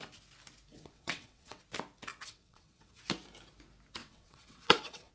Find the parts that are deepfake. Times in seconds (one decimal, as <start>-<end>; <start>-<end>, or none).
0.7-1.6; 2.1-3.0; 4.0-5.1